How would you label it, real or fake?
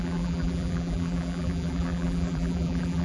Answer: fake